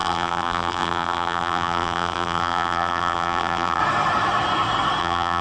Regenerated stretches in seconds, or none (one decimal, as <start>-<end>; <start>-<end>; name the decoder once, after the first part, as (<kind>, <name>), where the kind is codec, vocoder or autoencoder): 0.0-3.8 (vocoder, BigVGAN v2); 5.0-5.4

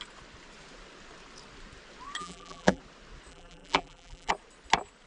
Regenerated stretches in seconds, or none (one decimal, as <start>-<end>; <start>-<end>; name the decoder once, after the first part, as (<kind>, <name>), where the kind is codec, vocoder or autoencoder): 2.2-2.8 (vocoder, BigVGAN v2); 3.3-4.3

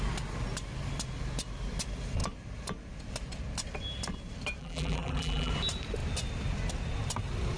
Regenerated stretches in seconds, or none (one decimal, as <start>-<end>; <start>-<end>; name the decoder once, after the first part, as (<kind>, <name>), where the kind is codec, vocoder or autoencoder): 4.6-5.5 (vocoder, BigVGAN v2)

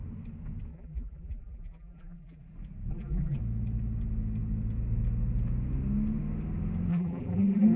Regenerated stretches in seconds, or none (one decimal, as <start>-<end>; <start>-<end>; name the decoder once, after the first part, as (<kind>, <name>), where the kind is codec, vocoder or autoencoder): 0.7-2.4 (vocoder, BigVGAN v2); 2.9-3.4; 6.9-7.8